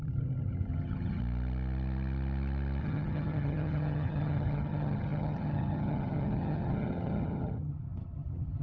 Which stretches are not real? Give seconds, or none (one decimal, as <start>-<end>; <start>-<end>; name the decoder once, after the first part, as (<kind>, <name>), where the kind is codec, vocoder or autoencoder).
0.0-1.2 (vocoder, HiFi-GAN); 2.8-8.6